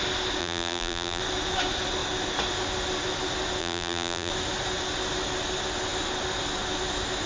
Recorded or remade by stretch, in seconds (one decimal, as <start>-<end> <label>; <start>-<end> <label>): 0.0-0.4 recorded; 0.4-1.2 remade; 1.2-3.6 recorded; 3.6-4.3 remade; 4.3-7.3 recorded